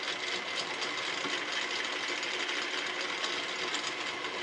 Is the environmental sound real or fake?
real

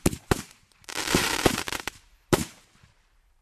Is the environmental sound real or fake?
fake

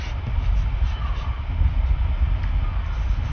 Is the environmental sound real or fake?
real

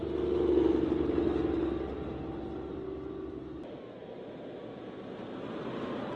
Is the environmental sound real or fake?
real